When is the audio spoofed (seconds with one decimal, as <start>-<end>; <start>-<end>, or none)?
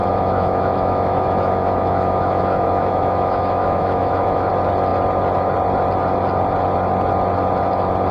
0.0-4.5